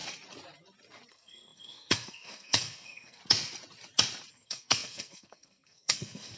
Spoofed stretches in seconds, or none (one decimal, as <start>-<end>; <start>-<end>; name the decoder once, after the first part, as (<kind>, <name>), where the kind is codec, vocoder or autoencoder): 1.1-3.2 (codec, SNAC); 4.3-6.4